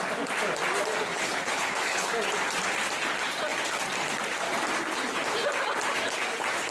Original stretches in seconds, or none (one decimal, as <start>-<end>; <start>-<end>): 0.0-1.1; 2.1-6.7

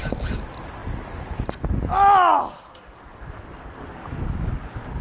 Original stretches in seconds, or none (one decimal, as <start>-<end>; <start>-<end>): 0.0-5.0

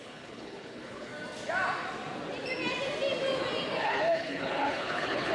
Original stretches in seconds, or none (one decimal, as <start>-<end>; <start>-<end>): 1.1-3.8